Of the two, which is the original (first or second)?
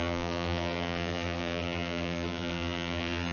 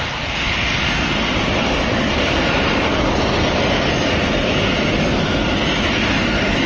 second